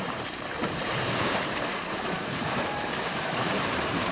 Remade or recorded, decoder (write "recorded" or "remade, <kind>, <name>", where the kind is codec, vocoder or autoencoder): remade, vocoder, BigVGAN v2